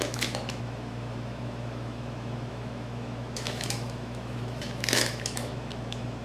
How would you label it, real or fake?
fake